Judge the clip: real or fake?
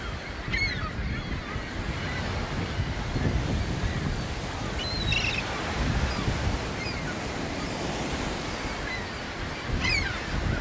real